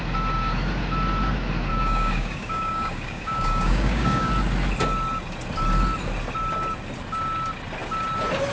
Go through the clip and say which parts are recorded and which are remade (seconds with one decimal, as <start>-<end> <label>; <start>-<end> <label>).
0.0-1.7 recorded; 1.7-4.3 remade; 4.3-8.5 recorded